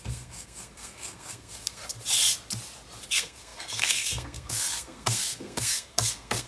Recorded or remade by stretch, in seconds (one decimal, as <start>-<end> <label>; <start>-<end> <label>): 0.0-1.8 remade; 1.8-3.1 recorded; 3.1-6.5 remade